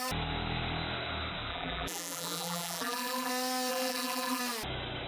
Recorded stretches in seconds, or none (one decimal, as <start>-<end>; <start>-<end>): 0.0-1.5; 3.3-3.7; 4.4-5.1